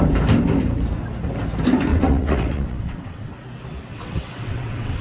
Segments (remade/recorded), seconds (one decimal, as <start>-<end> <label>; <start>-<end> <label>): 0.0-1.9 recorded; 1.9-3.3 remade; 3.3-3.9 recorded; 3.9-5.0 remade